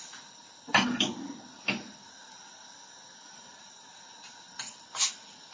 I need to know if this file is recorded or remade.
recorded